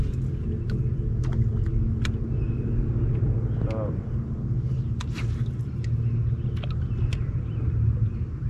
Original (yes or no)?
yes